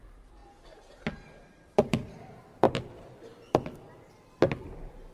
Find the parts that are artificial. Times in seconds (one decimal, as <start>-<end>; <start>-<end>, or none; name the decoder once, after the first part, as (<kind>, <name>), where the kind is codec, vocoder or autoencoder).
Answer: 0.0-0.4 (vocoder, BigVGAN v2); 1.4-3.3; 3.9-5.1

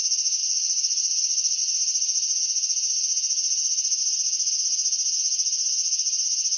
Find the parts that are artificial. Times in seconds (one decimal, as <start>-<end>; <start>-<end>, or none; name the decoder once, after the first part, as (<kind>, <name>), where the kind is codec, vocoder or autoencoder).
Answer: 0.4-1.6 (vocoder, Vocos)

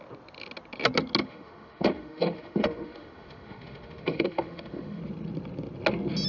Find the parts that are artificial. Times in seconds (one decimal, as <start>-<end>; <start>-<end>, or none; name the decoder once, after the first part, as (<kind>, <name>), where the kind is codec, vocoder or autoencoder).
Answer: 1.2-5.0 (autoencoder, DAC-VAE)

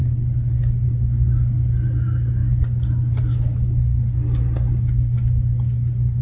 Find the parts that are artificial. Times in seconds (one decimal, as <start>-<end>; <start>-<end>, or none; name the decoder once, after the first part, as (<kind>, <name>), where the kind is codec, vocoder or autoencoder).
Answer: none

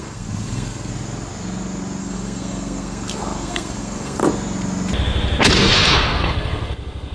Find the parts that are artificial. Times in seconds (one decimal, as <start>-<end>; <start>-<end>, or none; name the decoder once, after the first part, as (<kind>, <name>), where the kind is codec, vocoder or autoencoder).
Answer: 0.0-0.9 (codec, SNAC); 2.0-4.2; 5.6-7.1

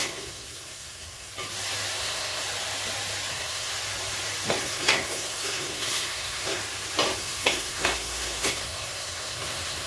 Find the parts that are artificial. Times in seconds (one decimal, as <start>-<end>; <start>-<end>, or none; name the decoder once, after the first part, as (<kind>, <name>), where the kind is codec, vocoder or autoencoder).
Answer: 0.0-1.3 (codec, SNAC); 2.0-2.4; 3.3-3.7; 4.6-6.6; 7.2-9.9